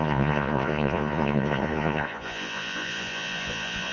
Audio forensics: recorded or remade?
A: remade